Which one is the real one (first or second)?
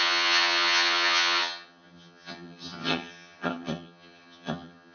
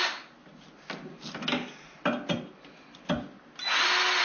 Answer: second